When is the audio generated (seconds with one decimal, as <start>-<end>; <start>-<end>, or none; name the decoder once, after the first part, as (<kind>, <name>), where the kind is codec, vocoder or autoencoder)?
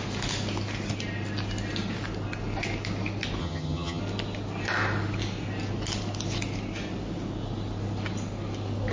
3.4-4.0 (vocoder, HiFi-GAN)